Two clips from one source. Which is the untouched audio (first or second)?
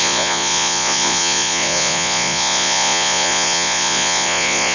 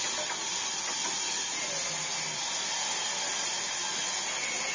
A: second